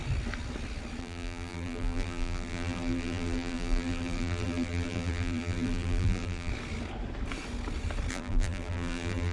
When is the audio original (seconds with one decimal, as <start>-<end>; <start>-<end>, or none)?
0.0-1.0; 6.5-8.1